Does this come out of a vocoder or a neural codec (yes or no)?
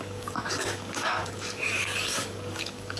yes